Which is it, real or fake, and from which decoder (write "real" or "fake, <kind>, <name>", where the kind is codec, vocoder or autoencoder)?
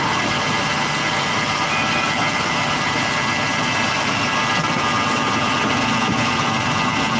real